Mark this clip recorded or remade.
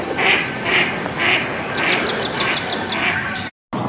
recorded